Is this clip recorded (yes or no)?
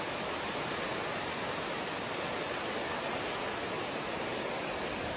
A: yes